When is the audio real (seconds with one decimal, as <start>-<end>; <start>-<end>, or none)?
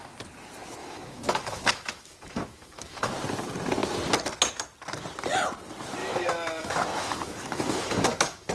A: 0.0-0.8; 3.1-6.0